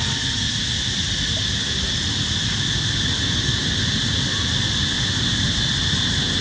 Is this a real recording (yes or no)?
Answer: yes